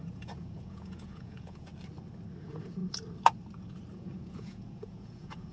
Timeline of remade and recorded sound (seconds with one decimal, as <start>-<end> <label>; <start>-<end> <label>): 0.0-1.7 remade; 1.7-2.4 recorded; 2.4-2.8 remade; 2.8-3.9 recorded; 3.9-5.5 remade